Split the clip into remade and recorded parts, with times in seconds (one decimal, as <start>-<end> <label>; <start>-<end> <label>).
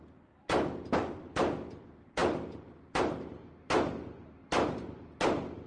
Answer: 0.0-2.2 recorded; 2.2-3.7 remade; 3.7-4.4 recorded; 4.4-5.2 remade; 5.2-5.7 recorded